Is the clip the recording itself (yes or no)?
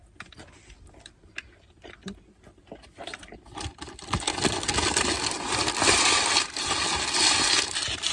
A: yes